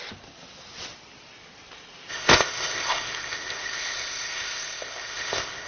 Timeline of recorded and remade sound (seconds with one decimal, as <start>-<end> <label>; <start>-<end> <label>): 0.0-2.1 recorded; 2.1-5.7 remade